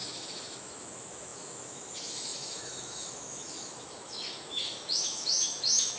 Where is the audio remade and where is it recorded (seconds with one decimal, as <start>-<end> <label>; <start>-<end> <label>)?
0.0-6.0 remade